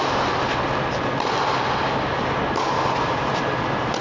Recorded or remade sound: recorded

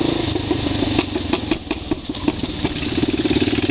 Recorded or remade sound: recorded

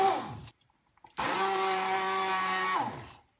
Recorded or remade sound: remade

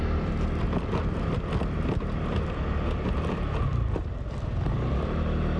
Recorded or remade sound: remade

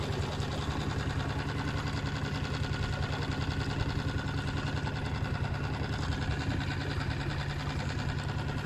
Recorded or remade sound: recorded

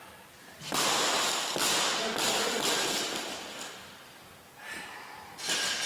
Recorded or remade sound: recorded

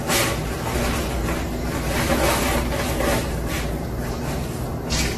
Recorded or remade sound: remade